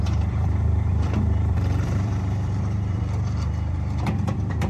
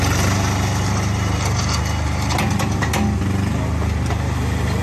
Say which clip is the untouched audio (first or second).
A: second